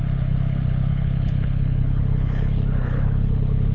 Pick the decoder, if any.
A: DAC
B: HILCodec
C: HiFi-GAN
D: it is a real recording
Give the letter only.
B